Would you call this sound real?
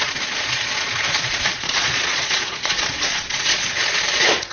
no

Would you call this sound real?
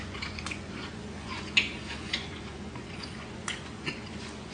no